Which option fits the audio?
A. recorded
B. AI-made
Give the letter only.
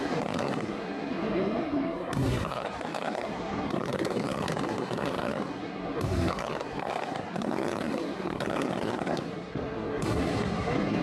B